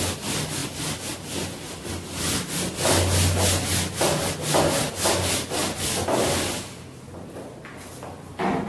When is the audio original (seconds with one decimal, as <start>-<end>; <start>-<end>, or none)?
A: 0.0-8.7